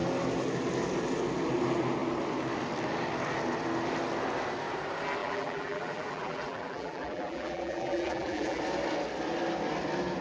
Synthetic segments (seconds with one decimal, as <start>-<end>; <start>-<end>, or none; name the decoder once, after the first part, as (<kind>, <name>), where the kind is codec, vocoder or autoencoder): 5.2-8.6 (vocoder, BigVGAN v2)